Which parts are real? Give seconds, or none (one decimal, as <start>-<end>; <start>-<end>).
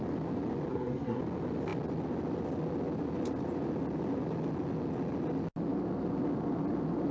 0.0-0.7; 1.2-7.1